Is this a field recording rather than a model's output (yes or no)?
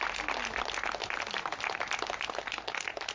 yes